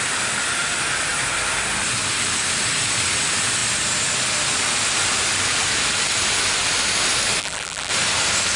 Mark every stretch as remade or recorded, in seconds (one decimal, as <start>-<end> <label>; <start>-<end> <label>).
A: 0.0-7.4 recorded; 7.4-7.9 remade; 7.9-8.6 recorded